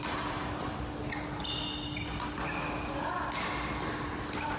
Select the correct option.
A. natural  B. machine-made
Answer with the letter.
A